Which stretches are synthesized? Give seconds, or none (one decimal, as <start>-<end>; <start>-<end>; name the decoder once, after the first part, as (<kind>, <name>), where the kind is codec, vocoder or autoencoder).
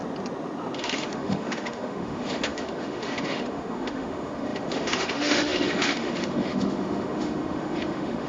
0.8-8.3 (autoencoder, DAC-VAE)